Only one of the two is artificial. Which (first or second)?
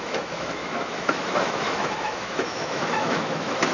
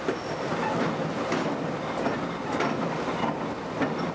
first